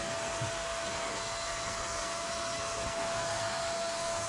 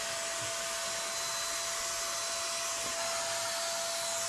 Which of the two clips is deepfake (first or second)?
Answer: first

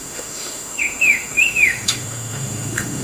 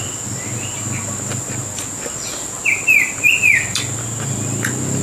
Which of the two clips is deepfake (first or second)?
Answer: first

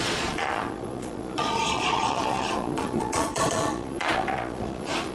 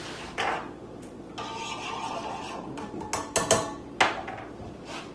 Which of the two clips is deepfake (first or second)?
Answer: first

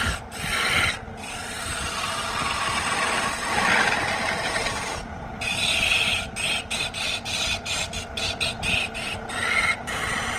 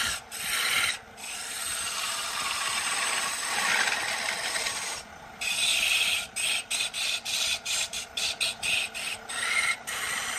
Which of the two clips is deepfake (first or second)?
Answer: second